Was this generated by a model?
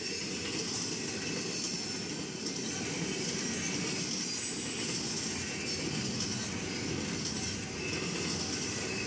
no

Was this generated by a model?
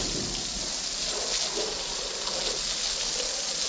no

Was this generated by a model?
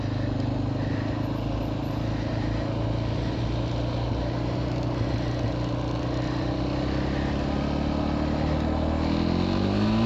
no